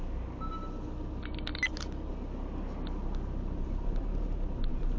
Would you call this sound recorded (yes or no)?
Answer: yes